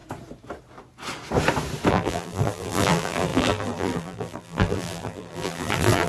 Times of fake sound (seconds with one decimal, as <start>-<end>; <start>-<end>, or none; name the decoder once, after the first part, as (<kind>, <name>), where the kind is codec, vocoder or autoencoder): 1.9-6.1 (vocoder, BigVGAN v2)